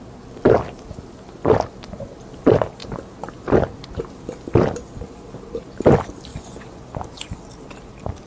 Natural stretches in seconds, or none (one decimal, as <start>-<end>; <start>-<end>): 0.0-6.3; 7.3-8.3